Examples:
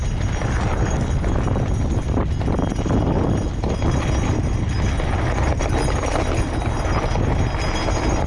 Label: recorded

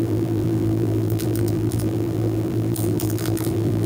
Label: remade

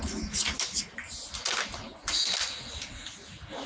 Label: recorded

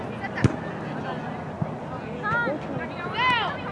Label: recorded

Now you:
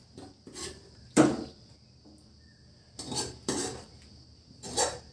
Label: remade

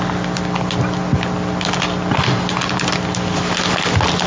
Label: recorded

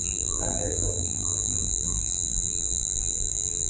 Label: remade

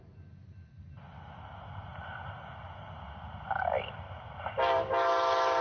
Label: recorded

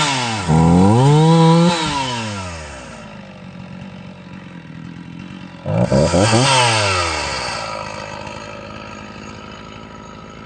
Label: recorded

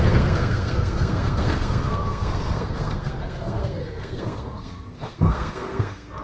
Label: remade